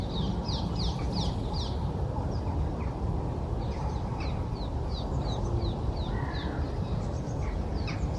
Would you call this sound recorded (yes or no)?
yes